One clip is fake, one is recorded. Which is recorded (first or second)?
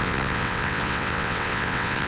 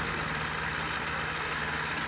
second